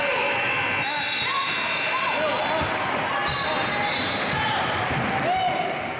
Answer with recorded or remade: recorded